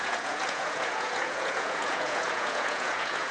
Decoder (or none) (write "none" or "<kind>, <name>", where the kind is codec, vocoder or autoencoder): vocoder, Vocos